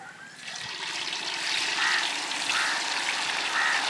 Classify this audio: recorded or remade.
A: recorded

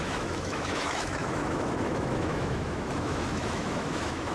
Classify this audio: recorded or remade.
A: remade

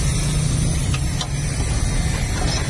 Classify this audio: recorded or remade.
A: recorded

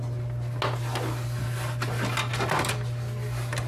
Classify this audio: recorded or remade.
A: recorded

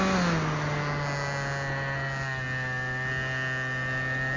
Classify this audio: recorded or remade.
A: recorded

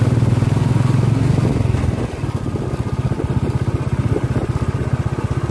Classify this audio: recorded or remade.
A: recorded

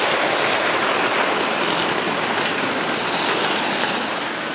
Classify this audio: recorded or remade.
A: recorded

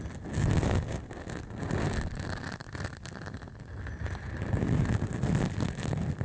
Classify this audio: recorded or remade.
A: recorded